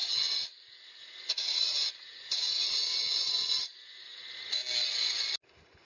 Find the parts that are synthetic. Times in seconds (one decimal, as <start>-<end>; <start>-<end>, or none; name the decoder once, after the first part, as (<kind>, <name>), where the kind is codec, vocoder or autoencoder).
0.0-4.6 (vocoder, Vocos)